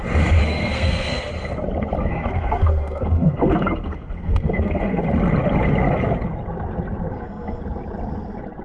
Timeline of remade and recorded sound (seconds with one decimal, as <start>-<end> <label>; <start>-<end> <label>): 0.0-0.4 recorded; 0.4-1.3 remade; 1.3-2.1 recorded; 2.1-5.0 remade; 5.0-7.1 recorded; 7.1-7.6 remade; 7.6-8.6 recorded

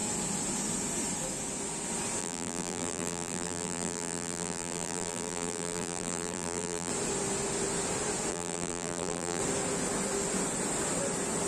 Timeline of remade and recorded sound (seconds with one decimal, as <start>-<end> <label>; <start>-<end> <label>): 0.0-2.2 recorded; 2.2-6.9 remade; 6.9-8.3 recorded; 8.3-9.4 remade; 9.4-11.5 recorded

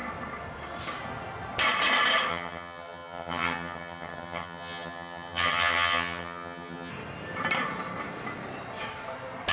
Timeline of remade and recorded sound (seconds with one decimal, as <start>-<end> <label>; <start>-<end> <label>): 0.0-2.3 recorded; 2.3-6.9 remade; 6.9-9.5 recorded

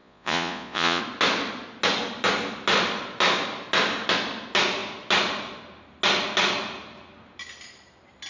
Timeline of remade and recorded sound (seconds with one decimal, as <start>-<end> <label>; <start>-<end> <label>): 0.0-1.0 remade; 1.0-8.3 recorded

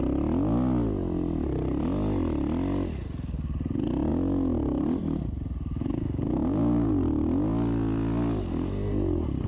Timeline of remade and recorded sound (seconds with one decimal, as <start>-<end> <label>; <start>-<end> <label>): 0.0-5.9 recorded; 5.9-6.9 remade; 6.9-9.5 recorded